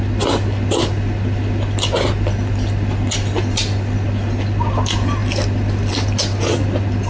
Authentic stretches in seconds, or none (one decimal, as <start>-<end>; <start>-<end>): 0.0-7.1